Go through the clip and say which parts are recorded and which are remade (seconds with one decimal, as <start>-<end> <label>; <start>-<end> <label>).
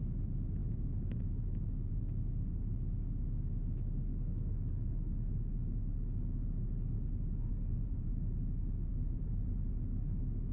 0.0-7.5 recorded; 7.5-8.2 remade; 8.2-8.9 recorded; 8.9-9.7 remade; 9.7-10.5 recorded